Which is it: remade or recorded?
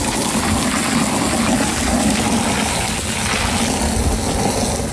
recorded